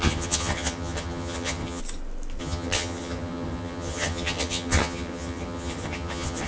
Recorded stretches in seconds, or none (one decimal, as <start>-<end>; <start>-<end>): 1.8-2.4